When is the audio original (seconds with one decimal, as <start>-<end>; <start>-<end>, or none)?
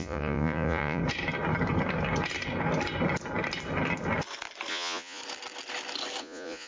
1.0-4.7; 5.2-6.2